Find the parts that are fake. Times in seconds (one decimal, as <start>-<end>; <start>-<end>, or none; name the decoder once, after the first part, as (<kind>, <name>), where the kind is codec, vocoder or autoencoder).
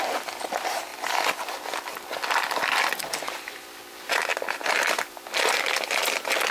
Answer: none